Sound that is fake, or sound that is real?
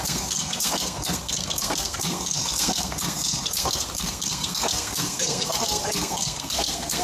fake